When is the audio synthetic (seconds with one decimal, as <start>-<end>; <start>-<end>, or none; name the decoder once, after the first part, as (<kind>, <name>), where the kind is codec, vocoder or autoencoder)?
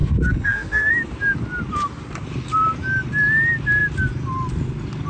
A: 0.0-0.9 (codec, SNAC)